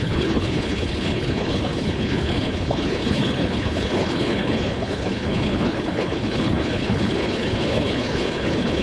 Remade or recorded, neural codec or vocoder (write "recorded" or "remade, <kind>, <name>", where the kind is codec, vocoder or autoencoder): remade, codec, HILCodec